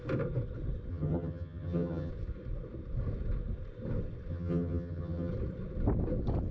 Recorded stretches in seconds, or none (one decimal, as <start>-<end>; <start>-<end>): 0.0-0.9; 2.1-4.3; 5.3-6.5